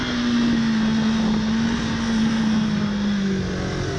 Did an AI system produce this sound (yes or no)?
no